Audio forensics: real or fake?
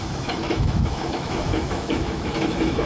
fake